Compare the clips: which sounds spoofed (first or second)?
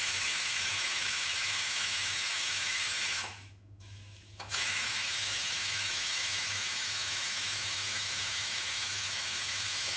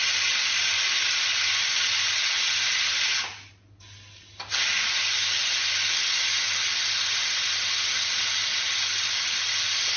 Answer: first